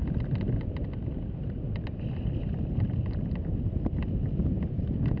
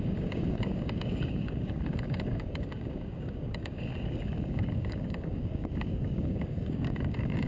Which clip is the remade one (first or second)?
second